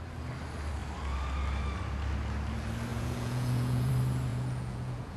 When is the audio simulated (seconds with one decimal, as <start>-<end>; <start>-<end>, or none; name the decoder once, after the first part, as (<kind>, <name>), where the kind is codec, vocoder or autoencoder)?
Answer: 2.9-3.9 (vocoder, Vocos); 4.3-5.2